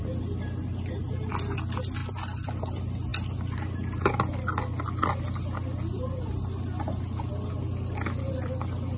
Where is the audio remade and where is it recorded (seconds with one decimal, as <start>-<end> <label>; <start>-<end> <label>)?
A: 0.0-2.0 recorded; 2.0-2.5 remade; 2.5-9.0 recorded